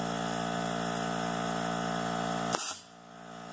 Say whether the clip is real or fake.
real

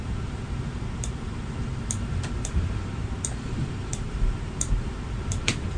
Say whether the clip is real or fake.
fake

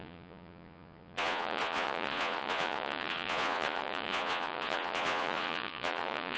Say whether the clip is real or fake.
fake